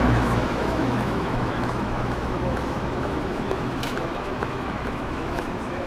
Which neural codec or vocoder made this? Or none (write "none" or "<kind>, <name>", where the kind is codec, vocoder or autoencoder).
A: autoencoder, DAC-VAE